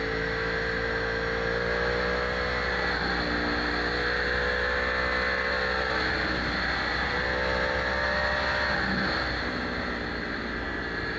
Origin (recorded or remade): recorded